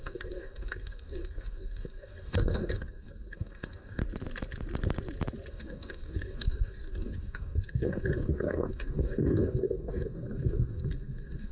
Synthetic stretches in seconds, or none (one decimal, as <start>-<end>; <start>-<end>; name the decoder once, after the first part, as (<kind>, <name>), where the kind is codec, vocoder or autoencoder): 0.0-4.0 (codec, DAC); 5.5-11.5